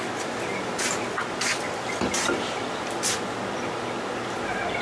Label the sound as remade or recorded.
recorded